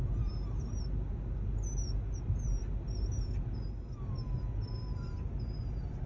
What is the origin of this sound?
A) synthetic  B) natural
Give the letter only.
B